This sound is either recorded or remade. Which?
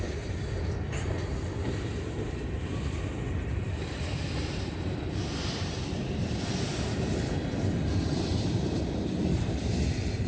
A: remade